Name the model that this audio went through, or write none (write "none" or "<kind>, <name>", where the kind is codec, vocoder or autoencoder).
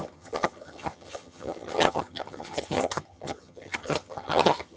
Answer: vocoder, HiFi-GAN